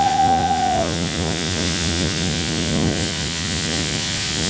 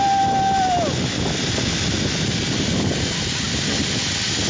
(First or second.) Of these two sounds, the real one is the second